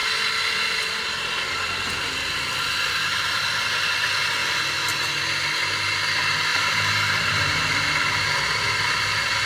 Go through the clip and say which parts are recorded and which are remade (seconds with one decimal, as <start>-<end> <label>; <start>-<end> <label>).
0.0-6.5 recorded; 6.5-7.6 remade; 7.6-9.5 recorded

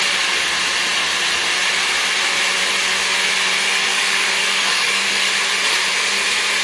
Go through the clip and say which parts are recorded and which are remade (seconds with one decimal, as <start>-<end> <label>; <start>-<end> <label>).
0.0-3.9 recorded; 3.9-5.3 remade; 5.3-6.6 recorded

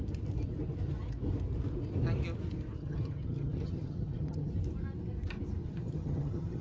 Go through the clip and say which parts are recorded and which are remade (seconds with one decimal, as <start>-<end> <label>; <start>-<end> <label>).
0.0-2.8 recorded; 2.8-4.5 remade; 4.5-5.6 recorded; 5.6-6.6 remade

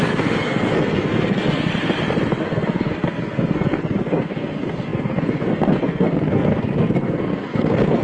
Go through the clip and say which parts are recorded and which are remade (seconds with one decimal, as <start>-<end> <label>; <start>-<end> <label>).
0.0-1.7 remade; 1.7-2.4 recorded; 2.4-8.0 remade